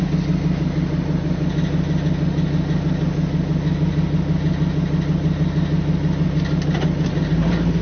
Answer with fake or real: real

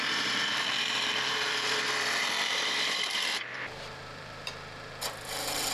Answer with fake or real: fake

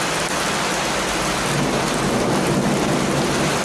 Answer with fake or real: real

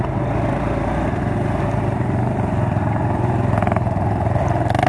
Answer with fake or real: real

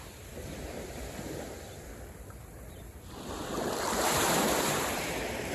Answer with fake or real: fake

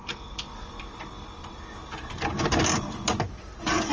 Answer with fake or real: real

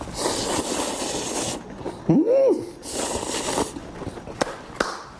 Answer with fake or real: fake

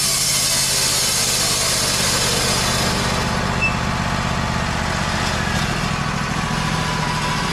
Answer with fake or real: real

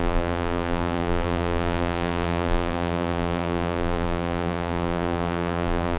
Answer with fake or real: fake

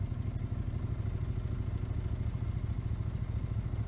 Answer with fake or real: real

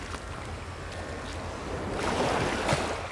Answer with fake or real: real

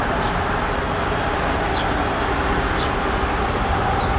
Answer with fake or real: real